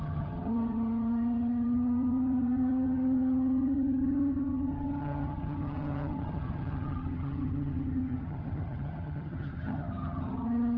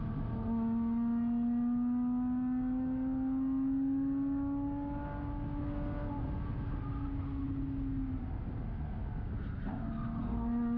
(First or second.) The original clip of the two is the second